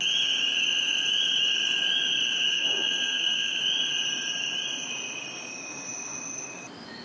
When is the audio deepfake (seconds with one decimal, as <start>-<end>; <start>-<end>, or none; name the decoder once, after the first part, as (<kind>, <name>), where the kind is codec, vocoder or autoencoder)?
2.5-3.6 (codec, SNAC)